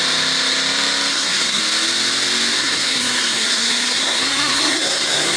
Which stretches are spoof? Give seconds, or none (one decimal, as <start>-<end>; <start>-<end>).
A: 1.1-1.6; 2.6-5.4